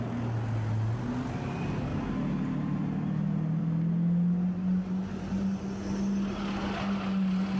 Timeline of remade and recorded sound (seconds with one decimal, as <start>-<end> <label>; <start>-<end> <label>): 0.0-7.6 recorded